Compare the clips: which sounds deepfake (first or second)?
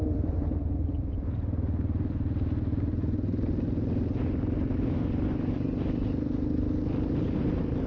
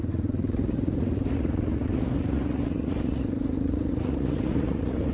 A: second